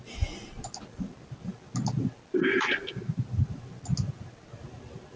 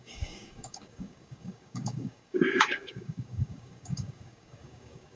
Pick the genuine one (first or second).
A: first